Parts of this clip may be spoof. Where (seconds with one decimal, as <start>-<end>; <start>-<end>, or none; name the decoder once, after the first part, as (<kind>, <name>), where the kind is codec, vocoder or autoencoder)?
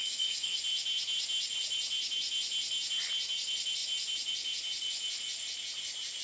0.0-0.6 (codec, SNAC)